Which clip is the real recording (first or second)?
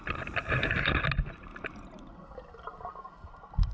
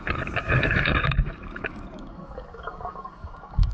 first